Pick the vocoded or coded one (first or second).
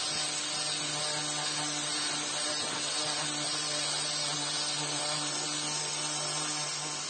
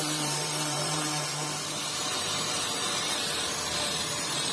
second